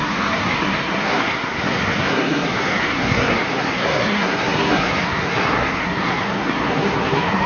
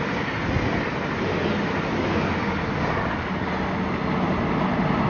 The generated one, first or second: first